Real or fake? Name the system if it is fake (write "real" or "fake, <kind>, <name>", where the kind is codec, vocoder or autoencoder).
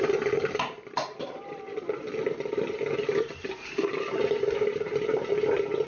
fake, vocoder, BigVGAN v2